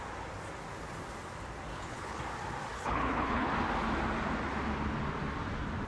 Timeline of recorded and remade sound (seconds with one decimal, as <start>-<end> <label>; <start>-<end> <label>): 0.0-1.7 recorded; 1.7-2.2 remade; 2.2-2.7 recorded; 2.7-3.5 remade; 3.5-5.9 recorded